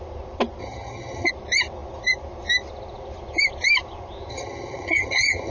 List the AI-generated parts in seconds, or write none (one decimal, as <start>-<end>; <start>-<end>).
0.6-1.3; 4.3-5.5